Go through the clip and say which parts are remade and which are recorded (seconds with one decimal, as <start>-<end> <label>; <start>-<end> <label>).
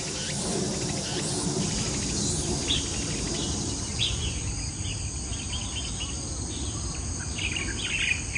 0.0-3.9 recorded; 3.9-4.5 remade; 4.5-8.4 recorded